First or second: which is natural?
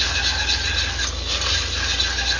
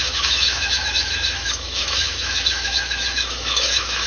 first